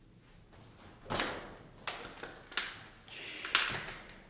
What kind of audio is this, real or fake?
real